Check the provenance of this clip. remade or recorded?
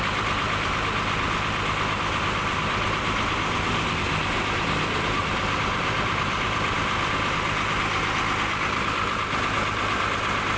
remade